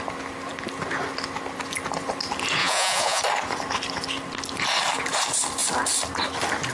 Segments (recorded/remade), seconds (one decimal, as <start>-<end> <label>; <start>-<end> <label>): 0.0-2.6 recorded; 2.6-3.2 remade; 3.2-6.7 recorded